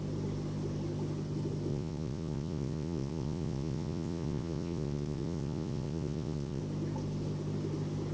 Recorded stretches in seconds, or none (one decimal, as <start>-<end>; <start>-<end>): 0.0-1.7; 6.6-8.1